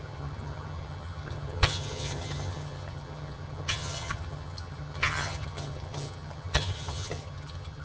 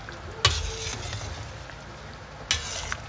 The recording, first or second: second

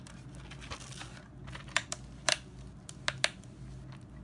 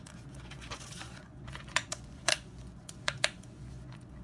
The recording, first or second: first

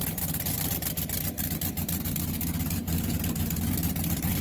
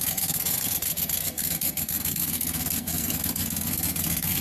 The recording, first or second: first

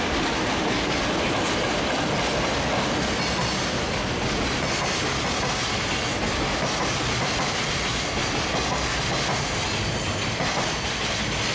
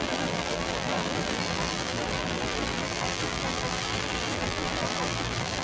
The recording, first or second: first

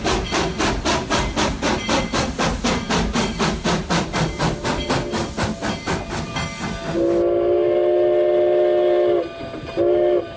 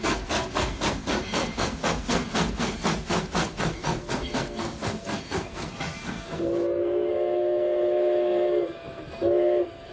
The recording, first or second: first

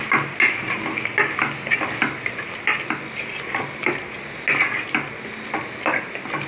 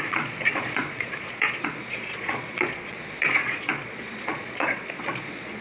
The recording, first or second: first